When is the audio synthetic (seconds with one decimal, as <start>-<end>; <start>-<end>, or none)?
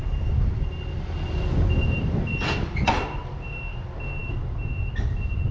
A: none